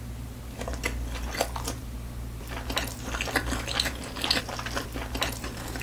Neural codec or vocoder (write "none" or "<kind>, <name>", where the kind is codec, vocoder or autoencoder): none